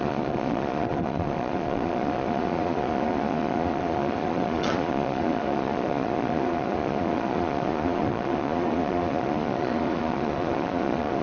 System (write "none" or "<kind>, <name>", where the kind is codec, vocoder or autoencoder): vocoder, Vocos